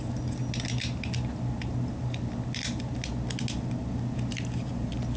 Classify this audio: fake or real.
real